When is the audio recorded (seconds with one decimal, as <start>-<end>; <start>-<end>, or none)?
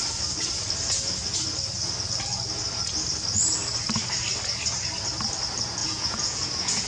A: 0.0-5.8